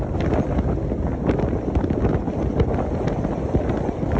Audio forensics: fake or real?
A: real